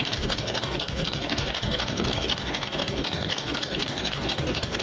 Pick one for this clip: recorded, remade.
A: remade